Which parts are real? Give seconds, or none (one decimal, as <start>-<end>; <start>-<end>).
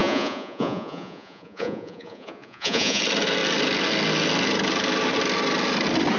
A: 3.0-6.2